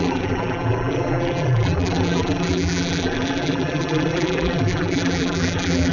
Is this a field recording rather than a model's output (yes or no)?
no